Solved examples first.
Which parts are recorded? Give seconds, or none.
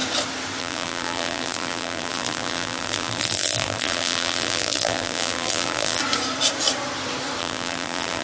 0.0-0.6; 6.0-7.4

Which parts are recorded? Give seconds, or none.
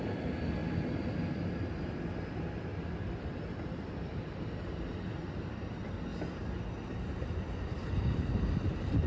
6.1-7.4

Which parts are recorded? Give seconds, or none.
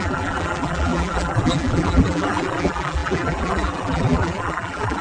none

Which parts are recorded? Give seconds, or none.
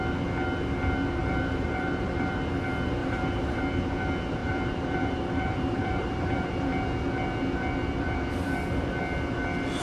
0.0-1.2; 2.4-3.0; 3.6-4.4; 6.5-9.8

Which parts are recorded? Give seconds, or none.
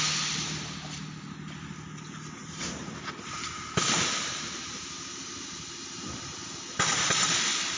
0.0-2.4; 5.2-7.8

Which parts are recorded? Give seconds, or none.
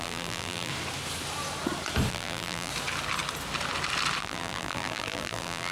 0.7-2.1; 2.7-4.2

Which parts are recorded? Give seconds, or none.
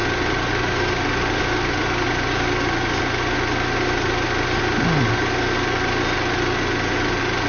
0.0-7.5